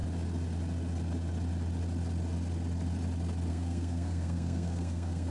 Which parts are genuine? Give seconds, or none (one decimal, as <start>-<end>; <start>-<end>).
0.0-3.5